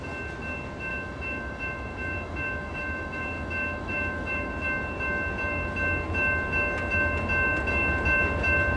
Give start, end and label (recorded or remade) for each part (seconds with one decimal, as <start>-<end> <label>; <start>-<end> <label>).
0.0-0.9 recorded; 0.9-4.5 remade; 4.5-8.8 recorded